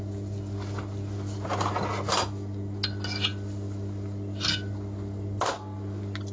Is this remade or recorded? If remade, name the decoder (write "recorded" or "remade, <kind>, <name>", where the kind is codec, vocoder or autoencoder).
recorded